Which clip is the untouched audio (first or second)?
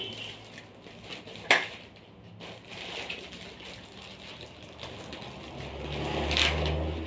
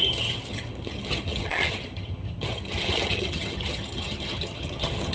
first